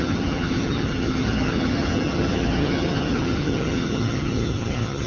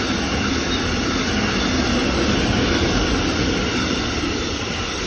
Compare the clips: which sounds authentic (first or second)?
second